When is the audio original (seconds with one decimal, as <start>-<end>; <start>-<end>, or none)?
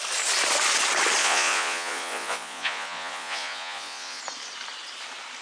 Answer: 0.0-1.2; 4.2-5.4